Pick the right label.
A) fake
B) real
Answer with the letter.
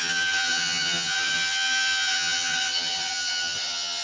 A